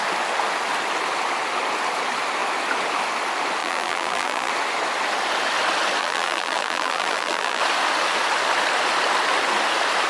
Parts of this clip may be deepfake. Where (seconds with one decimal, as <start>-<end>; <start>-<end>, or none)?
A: 3.6-4.5; 6.0-7.6